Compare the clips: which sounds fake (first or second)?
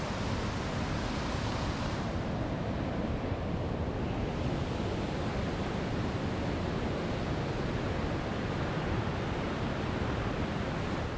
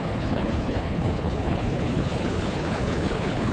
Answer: second